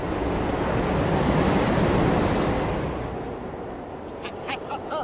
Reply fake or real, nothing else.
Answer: real